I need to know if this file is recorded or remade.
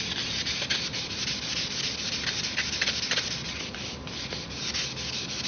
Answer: recorded